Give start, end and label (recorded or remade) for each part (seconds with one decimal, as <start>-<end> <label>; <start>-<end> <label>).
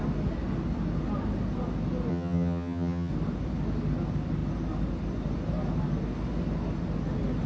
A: 0.0-2.1 recorded; 2.1-3.1 remade; 3.1-7.5 recorded